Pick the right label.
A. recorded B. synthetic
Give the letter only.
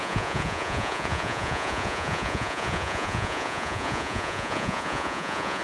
B